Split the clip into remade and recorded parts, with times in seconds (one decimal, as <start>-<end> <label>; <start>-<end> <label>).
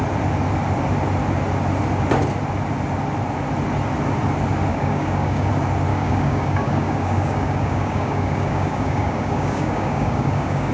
0.0-4.7 recorded; 4.7-5.5 remade; 5.5-5.9 recorded; 5.9-10.7 remade